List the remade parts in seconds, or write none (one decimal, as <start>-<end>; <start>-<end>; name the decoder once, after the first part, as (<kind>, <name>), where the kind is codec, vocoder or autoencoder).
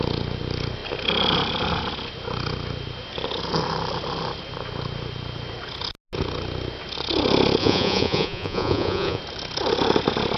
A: 7.6-9.2 (vocoder, Vocos)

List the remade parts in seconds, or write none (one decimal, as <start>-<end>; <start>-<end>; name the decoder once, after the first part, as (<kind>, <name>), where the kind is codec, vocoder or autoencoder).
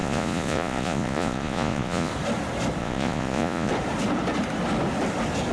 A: 0.0-2.1 (vocoder, Vocos); 2.8-3.7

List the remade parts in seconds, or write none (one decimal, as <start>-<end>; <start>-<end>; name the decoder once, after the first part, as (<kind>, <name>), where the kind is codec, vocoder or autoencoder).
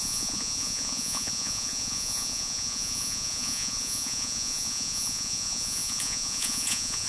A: 0.0-7.1 (vocoder, Vocos)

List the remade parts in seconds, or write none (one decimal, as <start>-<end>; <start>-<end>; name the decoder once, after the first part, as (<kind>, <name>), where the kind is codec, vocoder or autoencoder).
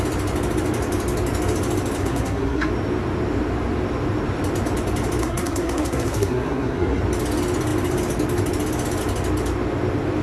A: 2.0-2.7 (codec, SNAC); 5.2-7.0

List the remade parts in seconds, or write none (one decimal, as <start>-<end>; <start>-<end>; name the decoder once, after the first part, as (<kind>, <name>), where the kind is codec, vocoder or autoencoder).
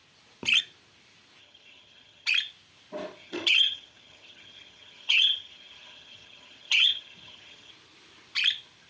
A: 1.4-2.3 (vocoder, HiFi-GAN); 3.2-7.7